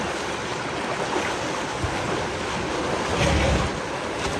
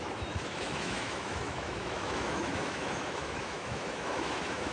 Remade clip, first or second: second